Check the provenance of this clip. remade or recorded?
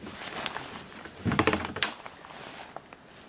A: recorded